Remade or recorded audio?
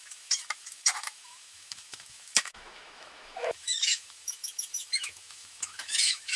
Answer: remade